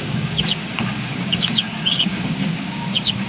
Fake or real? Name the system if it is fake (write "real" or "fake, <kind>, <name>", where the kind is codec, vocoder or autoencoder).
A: fake, codec, DAC